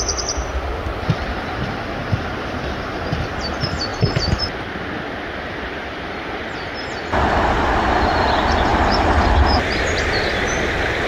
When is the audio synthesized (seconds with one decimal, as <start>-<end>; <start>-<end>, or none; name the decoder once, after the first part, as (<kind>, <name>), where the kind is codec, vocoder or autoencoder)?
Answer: 2.0-3.3 (vocoder, BigVGAN v2); 3.9-6.2; 8.7-11.1